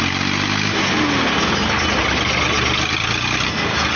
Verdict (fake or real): real